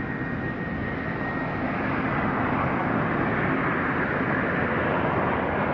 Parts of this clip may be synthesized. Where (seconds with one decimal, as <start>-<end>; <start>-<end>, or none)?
none